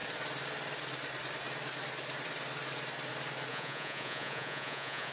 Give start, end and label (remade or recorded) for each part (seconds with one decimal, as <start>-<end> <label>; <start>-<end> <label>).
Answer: 0.0-3.5 recorded; 3.5-5.1 remade